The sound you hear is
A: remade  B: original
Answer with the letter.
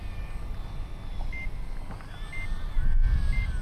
B